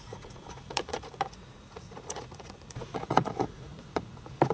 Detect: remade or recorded remade